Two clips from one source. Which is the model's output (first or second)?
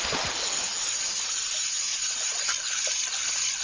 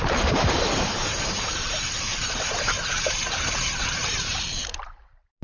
second